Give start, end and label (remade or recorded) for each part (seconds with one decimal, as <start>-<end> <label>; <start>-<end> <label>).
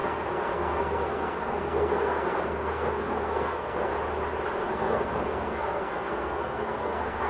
0.0-3.9 remade; 3.9-4.7 recorded; 4.7-7.3 remade